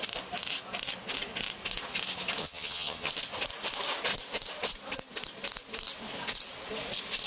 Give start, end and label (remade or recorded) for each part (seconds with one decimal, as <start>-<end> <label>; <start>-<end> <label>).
0.0-2.4 recorded; 2.4-3.1 remade; 3.1-7.3 recorded